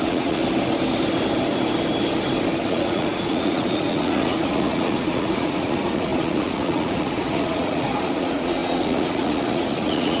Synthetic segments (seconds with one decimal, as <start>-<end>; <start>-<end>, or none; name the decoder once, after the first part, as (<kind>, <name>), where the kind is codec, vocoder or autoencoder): 0.0-0.4 (vocoder, Vocos); 2.7-10.2